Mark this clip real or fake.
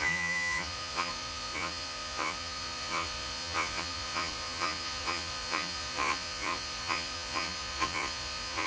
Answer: fake